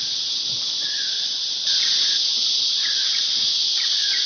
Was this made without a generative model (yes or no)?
yes